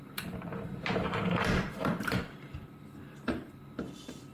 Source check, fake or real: fake